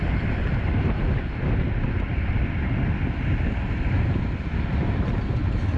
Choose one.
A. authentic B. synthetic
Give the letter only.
A